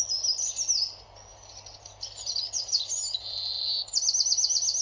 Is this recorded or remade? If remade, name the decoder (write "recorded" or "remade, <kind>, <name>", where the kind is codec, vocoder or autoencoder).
recorded